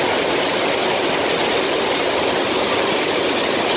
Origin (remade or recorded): recorded